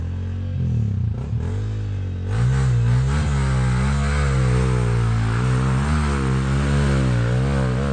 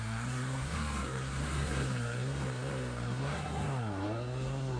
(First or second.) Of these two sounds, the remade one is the second